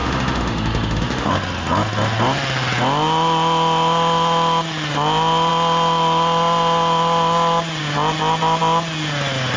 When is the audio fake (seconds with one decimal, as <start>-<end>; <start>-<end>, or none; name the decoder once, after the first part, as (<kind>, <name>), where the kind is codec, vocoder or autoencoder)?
0.0-1.3 (autoencoder, DAC-VAE)

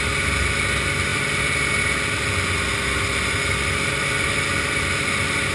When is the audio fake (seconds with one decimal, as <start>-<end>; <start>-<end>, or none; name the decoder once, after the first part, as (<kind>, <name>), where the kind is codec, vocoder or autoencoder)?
none

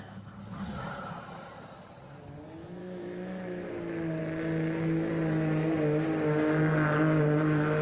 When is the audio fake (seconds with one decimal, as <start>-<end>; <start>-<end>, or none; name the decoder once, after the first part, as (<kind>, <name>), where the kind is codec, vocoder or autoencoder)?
2.8-4.2 (autoencoder, DAC-VAE)

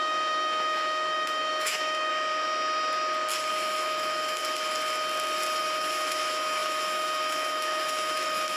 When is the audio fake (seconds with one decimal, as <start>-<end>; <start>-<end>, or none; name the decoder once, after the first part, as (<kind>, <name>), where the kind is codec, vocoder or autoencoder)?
0.0-2.1 (autoencoder, DAC-VAE); 3.5-4.4; 5.6-8.6

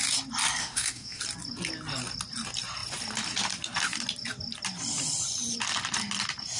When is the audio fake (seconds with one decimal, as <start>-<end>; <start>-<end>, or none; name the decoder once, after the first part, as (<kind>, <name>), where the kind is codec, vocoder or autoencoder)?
0.6-1.2 (autoencoder, DAC-VAE)

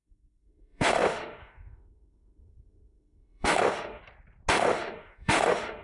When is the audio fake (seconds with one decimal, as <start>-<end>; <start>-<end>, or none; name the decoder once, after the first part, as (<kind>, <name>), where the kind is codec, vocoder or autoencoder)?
0.0-4.0 (autoencoder, DAC-VAE); 4.5-5.8

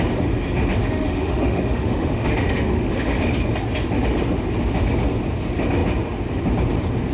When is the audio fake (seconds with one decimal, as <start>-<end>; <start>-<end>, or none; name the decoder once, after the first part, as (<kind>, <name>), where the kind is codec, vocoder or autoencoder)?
0.8-3.2 (autoencoder, DAC-VAE)